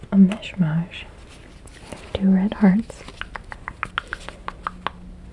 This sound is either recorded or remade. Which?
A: recorded